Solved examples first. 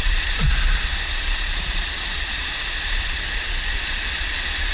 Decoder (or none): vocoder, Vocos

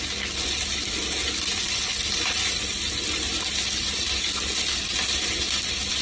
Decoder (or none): none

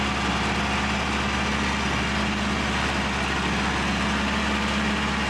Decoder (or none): none